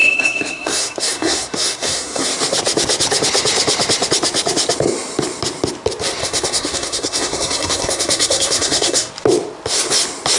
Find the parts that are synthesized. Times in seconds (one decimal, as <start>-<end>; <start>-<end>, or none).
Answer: 0.0-2.3; 6.2-9.1